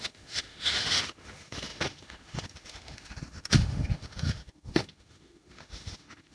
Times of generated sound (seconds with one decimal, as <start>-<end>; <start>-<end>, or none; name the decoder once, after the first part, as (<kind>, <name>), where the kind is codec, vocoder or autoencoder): 0.0-6.3 (autoencoder, DAC-VAE)